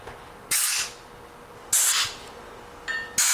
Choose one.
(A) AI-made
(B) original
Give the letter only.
B